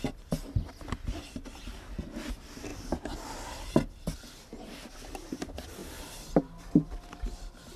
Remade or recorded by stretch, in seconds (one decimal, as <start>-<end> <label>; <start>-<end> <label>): 0.0-7.8 recorded